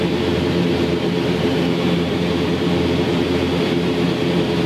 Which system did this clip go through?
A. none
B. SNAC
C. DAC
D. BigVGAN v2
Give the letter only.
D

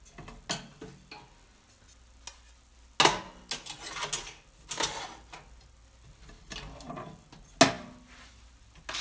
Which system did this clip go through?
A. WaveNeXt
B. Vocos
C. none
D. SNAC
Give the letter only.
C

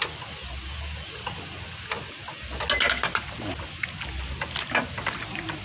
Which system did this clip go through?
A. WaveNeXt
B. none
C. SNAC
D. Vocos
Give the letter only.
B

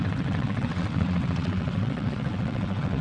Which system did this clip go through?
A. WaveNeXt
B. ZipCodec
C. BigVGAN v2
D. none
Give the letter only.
A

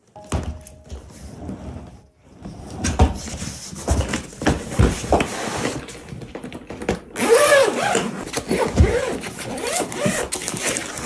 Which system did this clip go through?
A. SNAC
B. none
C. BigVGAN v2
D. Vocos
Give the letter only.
B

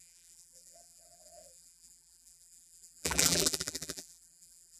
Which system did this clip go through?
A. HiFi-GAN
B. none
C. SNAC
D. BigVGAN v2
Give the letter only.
D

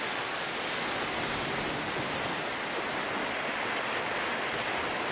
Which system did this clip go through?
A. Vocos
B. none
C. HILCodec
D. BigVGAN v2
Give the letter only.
B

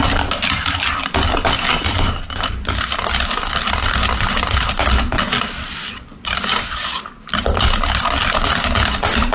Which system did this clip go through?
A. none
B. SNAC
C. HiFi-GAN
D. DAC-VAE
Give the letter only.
A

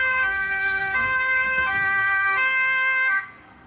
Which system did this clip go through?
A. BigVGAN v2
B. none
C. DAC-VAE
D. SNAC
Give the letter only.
D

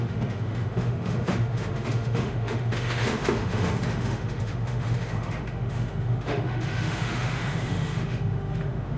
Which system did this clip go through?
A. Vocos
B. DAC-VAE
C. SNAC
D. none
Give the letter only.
B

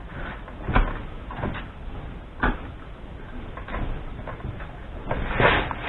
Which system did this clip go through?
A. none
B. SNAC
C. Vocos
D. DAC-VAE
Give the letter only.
A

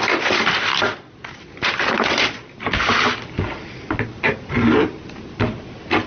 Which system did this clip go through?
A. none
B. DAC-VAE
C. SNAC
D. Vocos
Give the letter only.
A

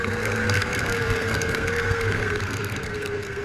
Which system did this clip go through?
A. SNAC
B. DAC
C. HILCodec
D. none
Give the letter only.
A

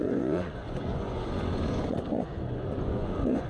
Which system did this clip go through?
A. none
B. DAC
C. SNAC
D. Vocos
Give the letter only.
D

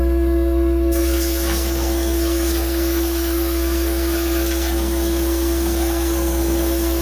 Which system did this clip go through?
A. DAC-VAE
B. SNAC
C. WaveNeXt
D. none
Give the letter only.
B